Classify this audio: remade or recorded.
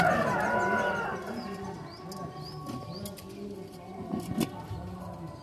recorded